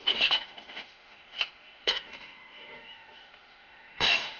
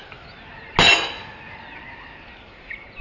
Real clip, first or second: second